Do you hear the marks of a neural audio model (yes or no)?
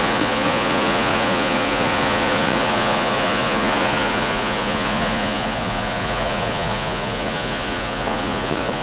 yes